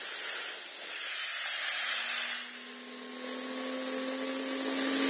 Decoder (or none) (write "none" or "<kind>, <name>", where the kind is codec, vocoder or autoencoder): none